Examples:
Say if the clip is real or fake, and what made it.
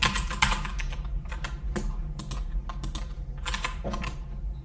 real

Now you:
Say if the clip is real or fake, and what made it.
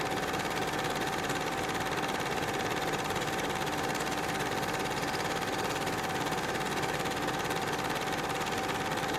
fake, vocoder, BigVGAN v2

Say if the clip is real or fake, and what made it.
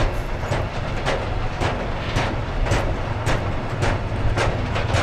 real